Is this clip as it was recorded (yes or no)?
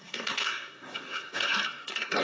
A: no